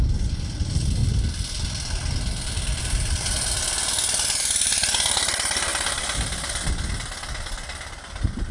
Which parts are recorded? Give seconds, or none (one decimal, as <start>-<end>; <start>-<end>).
3.6-4.4; 5.7-6.9

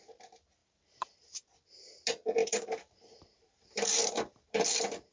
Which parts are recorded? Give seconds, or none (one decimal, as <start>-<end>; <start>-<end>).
0.0-0.6; 1.4-2.4

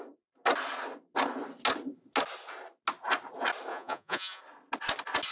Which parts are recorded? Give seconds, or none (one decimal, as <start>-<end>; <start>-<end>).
0.0-3.7; 4.4-5.3

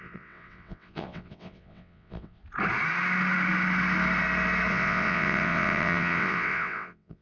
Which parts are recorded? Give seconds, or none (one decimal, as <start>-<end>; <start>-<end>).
2.4-4.7